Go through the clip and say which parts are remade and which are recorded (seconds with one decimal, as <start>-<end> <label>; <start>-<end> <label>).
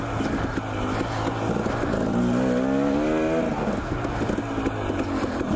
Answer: 0.0-3.6 recorded; 3.6-4.1 remade; 4.1-5.6 recorded